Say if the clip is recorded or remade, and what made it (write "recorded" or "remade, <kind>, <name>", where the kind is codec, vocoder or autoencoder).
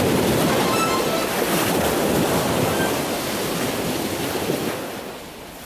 recorded